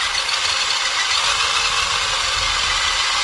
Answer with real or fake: real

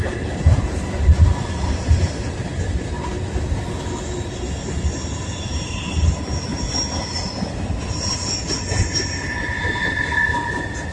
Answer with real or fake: real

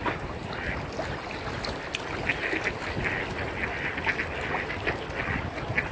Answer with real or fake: real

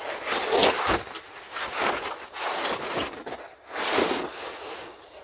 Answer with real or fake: real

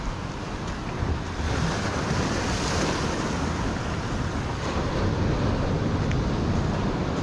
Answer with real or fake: real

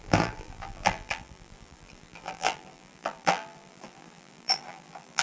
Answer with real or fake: fake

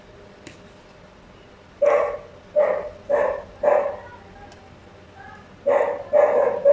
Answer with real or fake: real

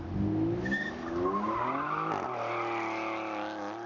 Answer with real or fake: real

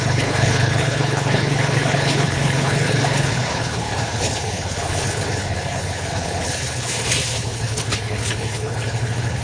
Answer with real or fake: fake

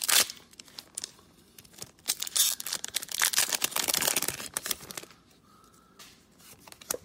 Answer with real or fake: real